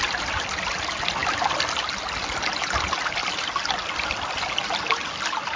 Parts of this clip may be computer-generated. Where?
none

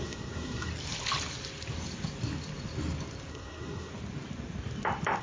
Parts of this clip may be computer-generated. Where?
0.0-0.7 (codec, SNAC); 3.3-3.9

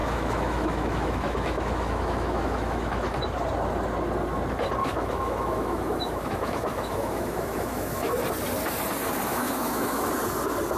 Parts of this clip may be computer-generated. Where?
0.0-3.2 (autoencoder, DAC-VAE); 4.8-8.1; 9.3-10.1

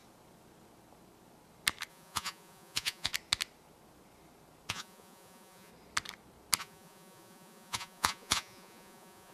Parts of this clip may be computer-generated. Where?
1.9-3.1 (vocoder, Vocos); 4.7-5.7; 6.6-9.3